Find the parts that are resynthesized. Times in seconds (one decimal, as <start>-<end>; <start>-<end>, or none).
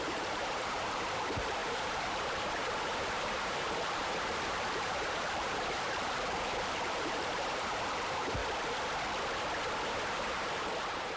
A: 0.0-8.4; 9.9-11.2